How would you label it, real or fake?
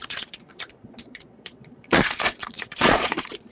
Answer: fake